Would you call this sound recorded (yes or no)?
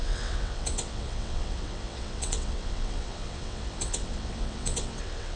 no